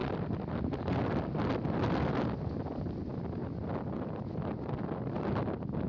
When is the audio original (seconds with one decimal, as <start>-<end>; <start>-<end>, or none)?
0.0-5.9